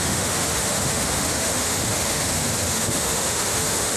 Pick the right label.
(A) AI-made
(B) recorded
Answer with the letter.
A